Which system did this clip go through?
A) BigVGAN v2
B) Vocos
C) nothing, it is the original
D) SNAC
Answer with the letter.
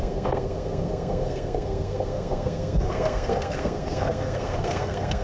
D